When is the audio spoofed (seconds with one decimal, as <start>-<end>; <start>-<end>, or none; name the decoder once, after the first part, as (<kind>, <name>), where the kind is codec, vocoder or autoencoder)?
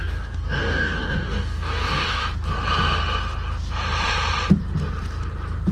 0.0-2.2 (codec, DAC)